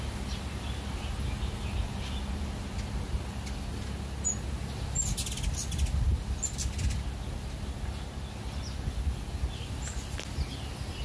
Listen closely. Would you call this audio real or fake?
real